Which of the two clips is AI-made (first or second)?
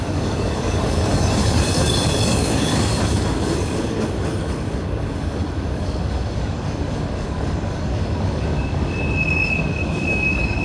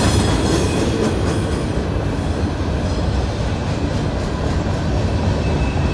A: first